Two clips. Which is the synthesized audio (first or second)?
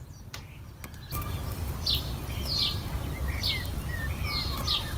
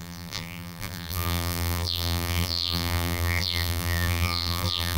second